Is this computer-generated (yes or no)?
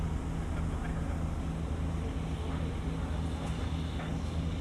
no